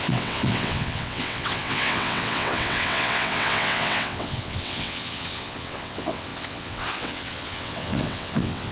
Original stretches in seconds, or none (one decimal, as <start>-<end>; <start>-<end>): none